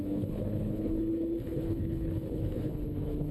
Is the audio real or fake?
fake